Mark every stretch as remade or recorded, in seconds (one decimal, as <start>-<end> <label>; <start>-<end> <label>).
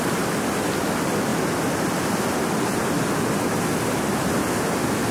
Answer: 0.0-5.1 recorded